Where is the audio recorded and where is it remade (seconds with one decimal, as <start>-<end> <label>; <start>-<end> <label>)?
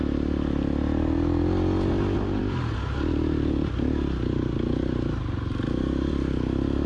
0.0-6.9 recorded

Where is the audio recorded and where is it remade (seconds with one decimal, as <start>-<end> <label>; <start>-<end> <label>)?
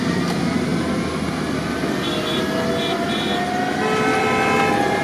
0.0-5.0 recorded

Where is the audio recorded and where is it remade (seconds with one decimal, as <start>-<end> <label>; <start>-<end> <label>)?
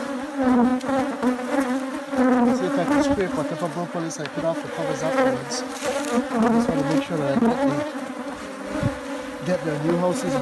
0.0-10.4 recorded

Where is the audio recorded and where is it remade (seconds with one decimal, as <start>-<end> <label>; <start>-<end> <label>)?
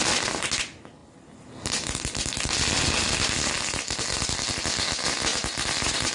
0.0-5.3 recorded; 5.3-6.1 remade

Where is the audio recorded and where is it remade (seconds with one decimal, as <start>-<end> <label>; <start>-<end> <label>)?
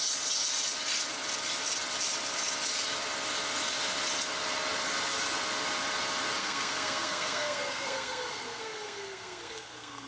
0.0-6.4 recorded; 6.4-10.1 remade